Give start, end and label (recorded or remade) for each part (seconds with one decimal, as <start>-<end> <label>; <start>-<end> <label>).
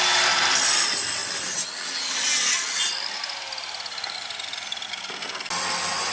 0.0-6.1 recorded